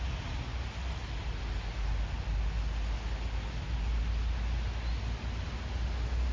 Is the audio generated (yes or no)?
no